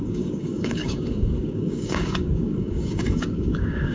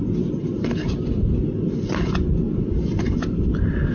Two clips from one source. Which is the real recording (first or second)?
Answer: second